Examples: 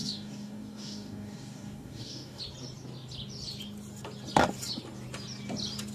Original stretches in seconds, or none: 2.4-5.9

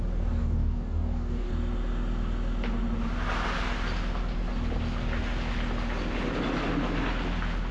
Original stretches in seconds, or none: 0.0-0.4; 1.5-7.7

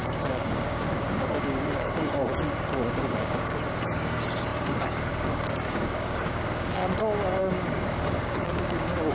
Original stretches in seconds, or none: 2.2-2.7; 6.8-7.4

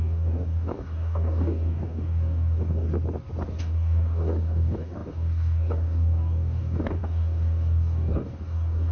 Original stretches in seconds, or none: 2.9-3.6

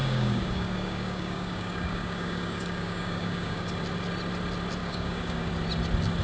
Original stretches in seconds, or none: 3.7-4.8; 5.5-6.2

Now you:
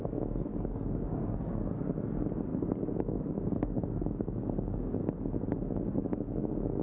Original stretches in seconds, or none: 0.0-0.5; 1.6-2.5

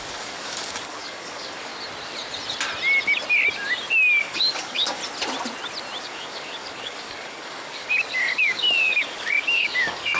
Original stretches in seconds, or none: 1.7-4.2; 5.0-6.0

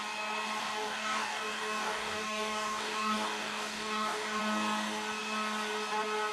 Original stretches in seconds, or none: 0.0-0.6; 4.4-6.3